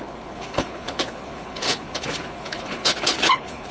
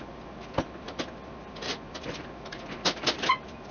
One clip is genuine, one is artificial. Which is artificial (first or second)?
first